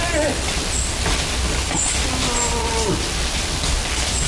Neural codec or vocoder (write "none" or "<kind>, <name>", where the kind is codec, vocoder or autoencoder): none